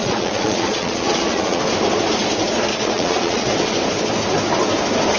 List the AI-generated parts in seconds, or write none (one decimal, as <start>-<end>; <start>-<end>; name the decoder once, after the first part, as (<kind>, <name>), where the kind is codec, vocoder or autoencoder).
0.0-1.6 (vocoder, Vocos); 2.7-3.5